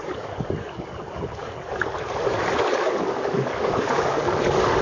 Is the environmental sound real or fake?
fake